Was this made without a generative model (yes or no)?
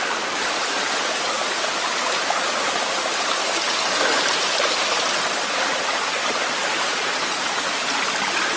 yes